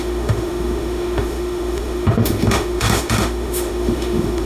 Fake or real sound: fake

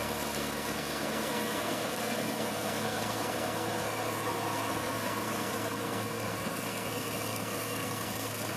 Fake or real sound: fake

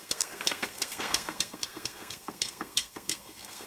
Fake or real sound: fake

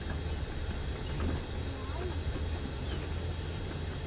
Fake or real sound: real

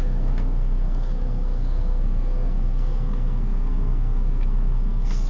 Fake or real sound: fake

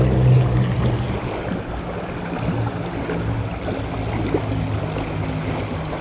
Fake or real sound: real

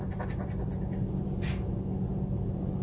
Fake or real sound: real